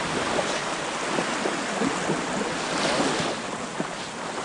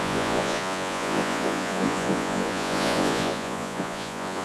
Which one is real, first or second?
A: first